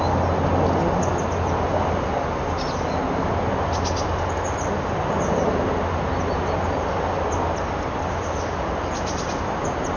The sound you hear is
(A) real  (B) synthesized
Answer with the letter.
A